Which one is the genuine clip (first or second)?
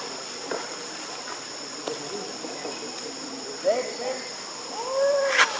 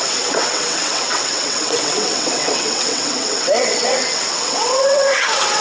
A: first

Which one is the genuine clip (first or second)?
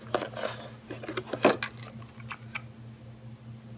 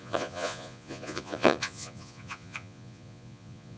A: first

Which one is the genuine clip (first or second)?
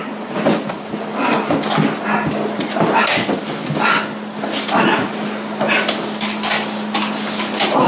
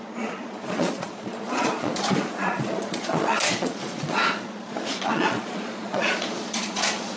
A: first